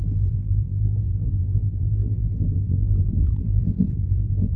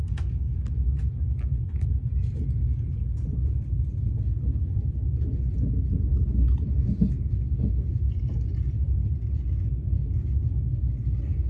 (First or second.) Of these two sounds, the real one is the second